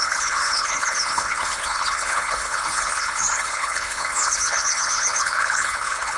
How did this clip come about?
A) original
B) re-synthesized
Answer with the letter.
B